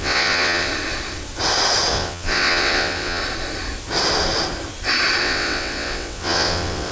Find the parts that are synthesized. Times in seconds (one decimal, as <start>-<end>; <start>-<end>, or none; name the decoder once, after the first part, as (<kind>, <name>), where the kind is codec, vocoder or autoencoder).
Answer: 0.0-0.7 (vocoder, WaveNeXt); 1.9-3.2; 5.2-6.9